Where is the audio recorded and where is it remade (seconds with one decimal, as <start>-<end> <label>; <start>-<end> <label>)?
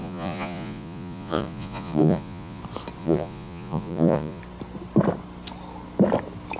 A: 0.0-2.6 remade; 2.6-3.0 recorded; 3.0-4.4 remade; 4.4-6.6 recorded